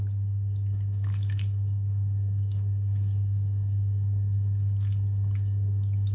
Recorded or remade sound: remade